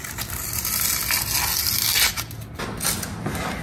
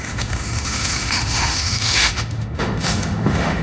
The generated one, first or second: second